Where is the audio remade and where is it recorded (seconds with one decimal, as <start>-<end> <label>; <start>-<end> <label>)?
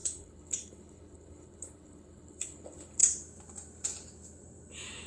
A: 0.0-3.0 remade; 3.0-5.1 recorded